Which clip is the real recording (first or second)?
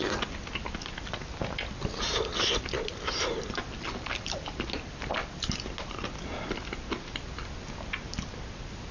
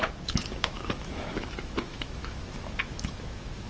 first